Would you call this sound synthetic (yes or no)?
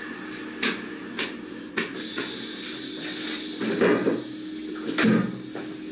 no